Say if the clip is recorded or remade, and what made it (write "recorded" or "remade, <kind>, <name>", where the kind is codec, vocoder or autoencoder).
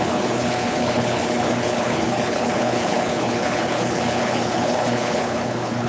remade, codec, HILCodec